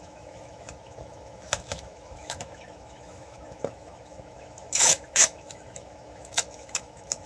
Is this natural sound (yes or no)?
no